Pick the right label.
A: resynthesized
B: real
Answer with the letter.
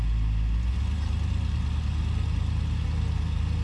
B